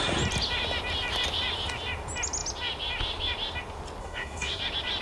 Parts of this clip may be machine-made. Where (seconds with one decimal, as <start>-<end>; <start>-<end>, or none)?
4.0-4.6